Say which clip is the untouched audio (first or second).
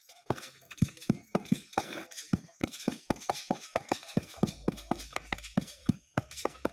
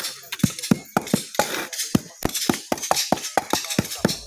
second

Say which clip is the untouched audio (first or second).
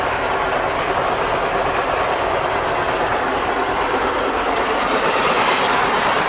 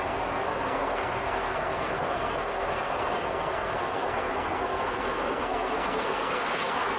first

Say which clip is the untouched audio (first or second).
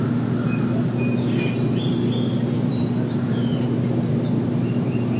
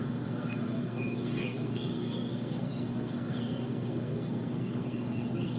first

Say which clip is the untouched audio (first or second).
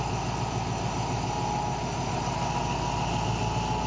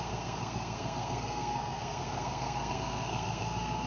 first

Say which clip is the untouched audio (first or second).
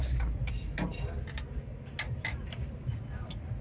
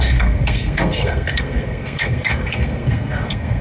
first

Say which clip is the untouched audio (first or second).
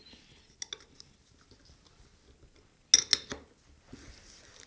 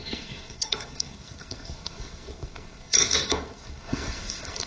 first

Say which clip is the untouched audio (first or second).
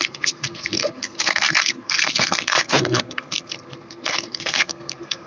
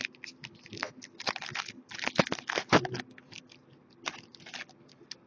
second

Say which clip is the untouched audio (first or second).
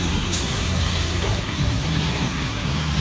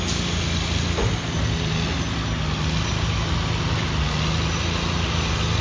second